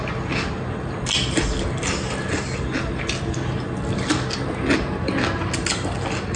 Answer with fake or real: real